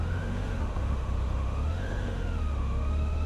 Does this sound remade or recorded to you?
remade